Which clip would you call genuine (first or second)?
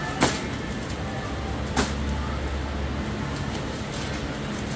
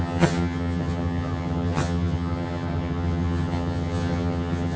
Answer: first